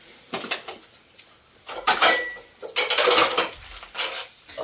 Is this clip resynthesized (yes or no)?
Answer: no